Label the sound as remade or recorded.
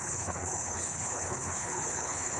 remade